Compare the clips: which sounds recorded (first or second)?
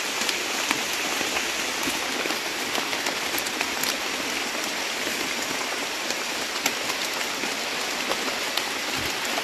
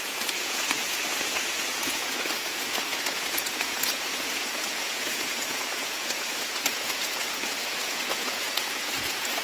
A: first